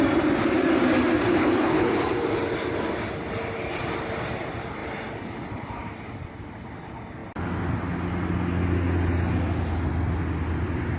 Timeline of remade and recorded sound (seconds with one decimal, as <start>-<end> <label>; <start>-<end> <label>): 0.0-1.2 recorded; 1.2-2.0 remade; 2.0-11.0 recorded

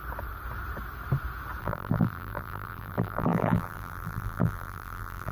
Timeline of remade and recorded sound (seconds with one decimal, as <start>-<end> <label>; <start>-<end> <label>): 0.0-1.6 recorded; 1.6-5.3 remade

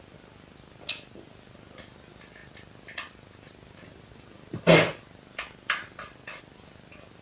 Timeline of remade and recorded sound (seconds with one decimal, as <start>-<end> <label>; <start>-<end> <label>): 0.0-7.2 recorded

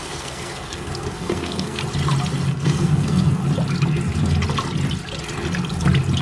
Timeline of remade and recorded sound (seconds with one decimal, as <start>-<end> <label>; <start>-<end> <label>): 0.0-1.8 remade; 1.8-2.5 recorded; 2.5-3.4 remade; 3.4-6.2 recorded

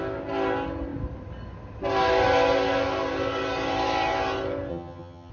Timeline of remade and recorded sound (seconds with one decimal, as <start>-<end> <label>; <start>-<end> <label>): 0.0-4.7 recorded; 4.7-5.3 remade

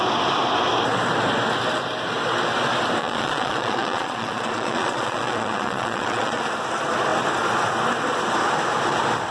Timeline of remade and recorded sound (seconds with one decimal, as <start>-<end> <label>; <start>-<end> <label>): 0.0-3.0 recorded; 3.0-6.4 remade; 6.4-9.3 recorded